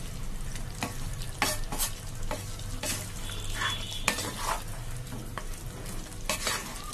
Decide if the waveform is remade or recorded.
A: recorded